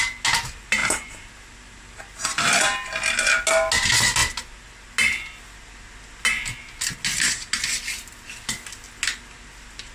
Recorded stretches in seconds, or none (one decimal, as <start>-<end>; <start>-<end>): 0.0-0.8; 2.0-9.9